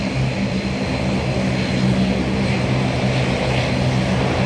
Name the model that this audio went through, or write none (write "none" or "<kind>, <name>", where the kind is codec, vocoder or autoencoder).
none